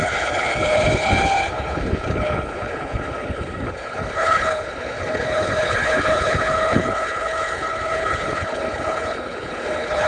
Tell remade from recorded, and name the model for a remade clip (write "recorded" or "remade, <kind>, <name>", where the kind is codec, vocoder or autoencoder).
remade, codec, HILCodec